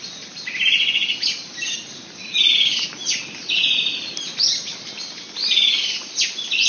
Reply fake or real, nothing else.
real